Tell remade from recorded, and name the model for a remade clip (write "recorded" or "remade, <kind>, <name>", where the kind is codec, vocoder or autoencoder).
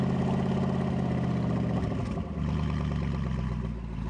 recorded